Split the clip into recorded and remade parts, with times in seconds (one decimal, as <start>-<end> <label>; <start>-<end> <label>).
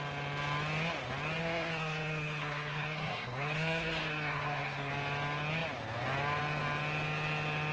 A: 0.0-1.4 recorded; 1.4-4.9 remade; 4.9-7.7 recorded